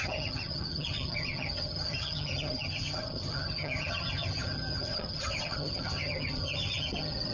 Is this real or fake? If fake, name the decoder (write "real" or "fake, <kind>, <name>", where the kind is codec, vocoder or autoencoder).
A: fake, vocoder, HiFi-GAN